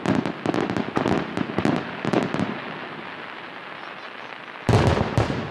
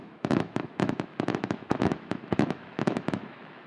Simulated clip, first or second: second